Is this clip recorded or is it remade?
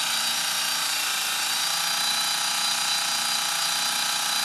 recorded